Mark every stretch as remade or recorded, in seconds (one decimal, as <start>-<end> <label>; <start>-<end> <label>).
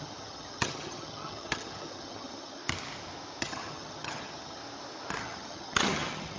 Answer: 0.0-2.6 remade; 2.6-3.4 recorded; 3.4-4.6 remade; 4.6-5.2 recorded; 5.2-6.4 remade